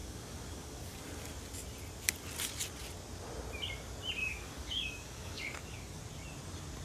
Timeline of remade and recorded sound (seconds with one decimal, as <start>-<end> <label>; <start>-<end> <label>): 0.0-1.0 remade; 1.0-4.2 recorded; 4.2-6.0 remade; 6.0-6.8 recorded